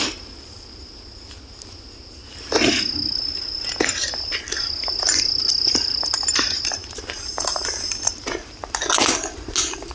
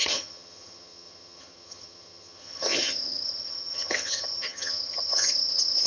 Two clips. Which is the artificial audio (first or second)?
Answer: second